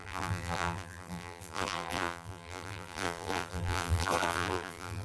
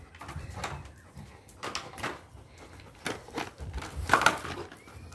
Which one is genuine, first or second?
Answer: second